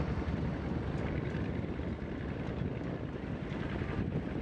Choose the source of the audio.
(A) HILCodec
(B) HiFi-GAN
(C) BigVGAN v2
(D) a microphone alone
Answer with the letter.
C